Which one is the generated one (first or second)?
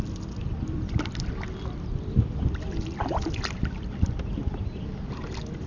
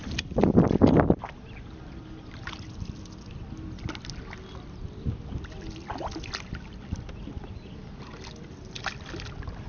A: first